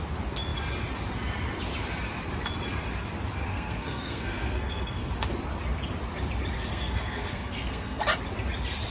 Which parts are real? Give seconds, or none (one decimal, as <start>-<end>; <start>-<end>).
0.0-3.5; 5.1-6.7; 8.0-8.9